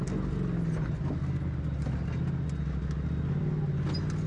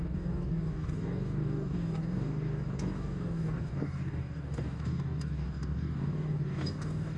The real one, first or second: first